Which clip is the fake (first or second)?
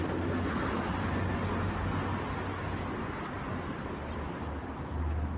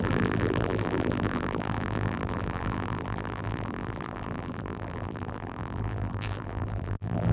second